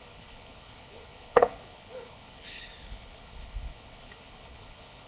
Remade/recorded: remade